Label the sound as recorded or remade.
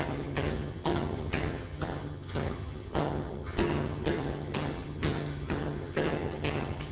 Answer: remade